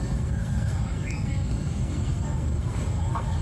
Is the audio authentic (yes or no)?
no